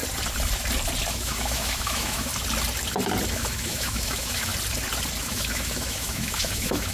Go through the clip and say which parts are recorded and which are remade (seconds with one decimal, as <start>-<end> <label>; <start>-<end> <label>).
0.0-1.1 recorded; 1.1-2.3 remade; 2.3-3.3 recorded; 3.3-4.5 remade; 4.5-5.2 recorded; 5.2-6.9 remade